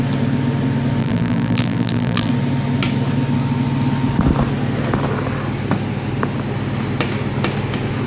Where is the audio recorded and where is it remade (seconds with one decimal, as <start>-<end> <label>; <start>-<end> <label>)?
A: 0.0-1.0 recorded; 1.0-2.3 remade; 2.3-8.1 recorded